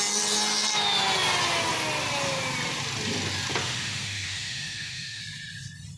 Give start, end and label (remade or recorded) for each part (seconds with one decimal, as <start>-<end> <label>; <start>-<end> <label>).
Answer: 0.0-3.6 recorded; 3.6-5.2 remade; 5.2-6.0 recorded